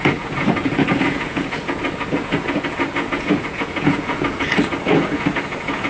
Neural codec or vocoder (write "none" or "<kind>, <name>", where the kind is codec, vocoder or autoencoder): vocoder, Vocos